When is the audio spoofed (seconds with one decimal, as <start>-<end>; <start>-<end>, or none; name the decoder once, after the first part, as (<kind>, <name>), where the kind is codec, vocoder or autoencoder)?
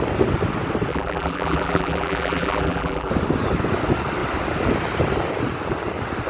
0.9-3.1 (vocoder, BigVGAN v2)